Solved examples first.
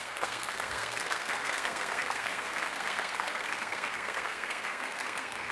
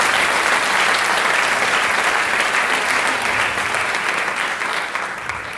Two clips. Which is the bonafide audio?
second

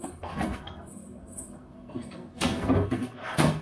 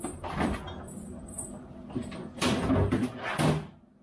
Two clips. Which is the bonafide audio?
second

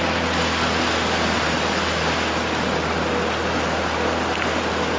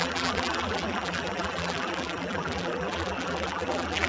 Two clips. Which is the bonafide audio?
first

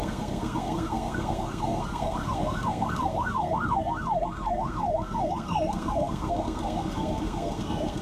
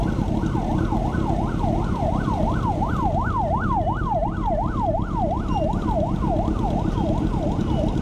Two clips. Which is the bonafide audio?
second